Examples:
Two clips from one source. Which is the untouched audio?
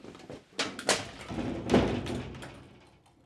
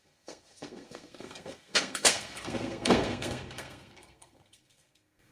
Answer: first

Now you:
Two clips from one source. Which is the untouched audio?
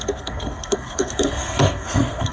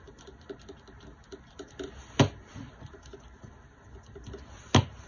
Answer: second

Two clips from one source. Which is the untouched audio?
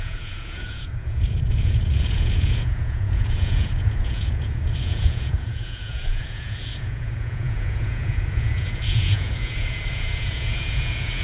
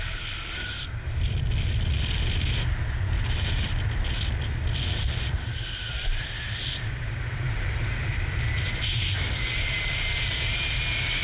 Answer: second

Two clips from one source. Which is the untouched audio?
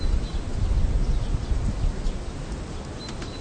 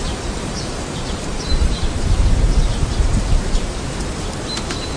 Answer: first